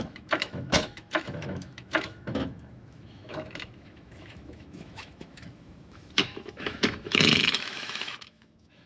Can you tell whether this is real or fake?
fake